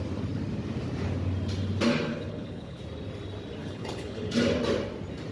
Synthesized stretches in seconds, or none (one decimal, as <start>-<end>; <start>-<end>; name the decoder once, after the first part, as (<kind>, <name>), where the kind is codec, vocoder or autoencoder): 2.1-2.8 (codec, HILCodec); 3.6-4.3